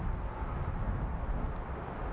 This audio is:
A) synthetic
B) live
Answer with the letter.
B